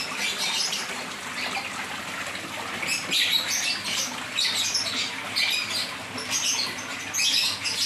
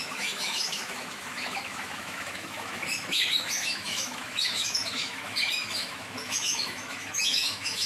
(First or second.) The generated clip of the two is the second